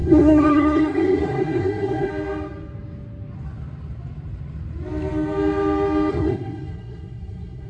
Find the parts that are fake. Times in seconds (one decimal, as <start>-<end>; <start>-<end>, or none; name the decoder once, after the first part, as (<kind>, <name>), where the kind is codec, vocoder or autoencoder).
0.0-2.1 (codec, SNAC); 6.1-7.7